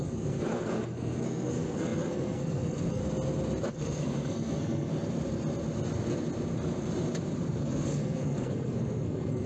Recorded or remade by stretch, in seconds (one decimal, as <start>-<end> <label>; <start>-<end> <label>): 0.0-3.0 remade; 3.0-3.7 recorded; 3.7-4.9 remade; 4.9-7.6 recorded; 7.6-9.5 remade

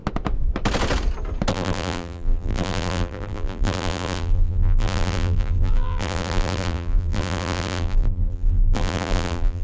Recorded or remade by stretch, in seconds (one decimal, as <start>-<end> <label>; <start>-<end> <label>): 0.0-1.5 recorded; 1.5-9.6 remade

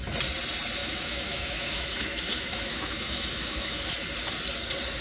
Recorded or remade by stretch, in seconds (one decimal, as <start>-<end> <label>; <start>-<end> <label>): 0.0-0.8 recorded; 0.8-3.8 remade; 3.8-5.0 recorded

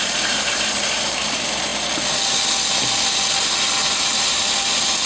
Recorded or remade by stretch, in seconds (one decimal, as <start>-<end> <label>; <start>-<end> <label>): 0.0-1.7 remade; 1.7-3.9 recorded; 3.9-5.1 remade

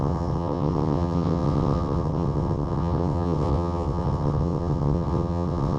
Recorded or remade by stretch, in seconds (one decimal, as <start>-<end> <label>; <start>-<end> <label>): 0.0-5.8 remade

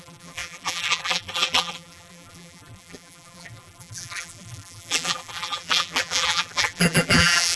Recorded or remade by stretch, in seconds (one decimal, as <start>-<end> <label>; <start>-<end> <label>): 0.0-7.6 remade